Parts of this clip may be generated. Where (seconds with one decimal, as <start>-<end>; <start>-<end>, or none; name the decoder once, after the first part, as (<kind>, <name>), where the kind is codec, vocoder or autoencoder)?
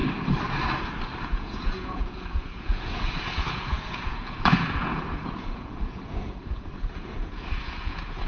1.2-8.3 (vocoder, Vocos)